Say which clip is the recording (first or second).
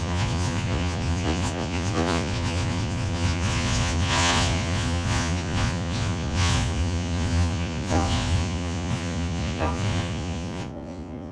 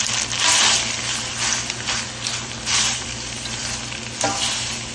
second